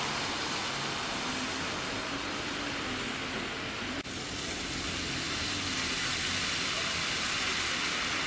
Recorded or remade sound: recorded